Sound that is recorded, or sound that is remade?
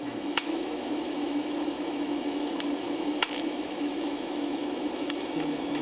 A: remade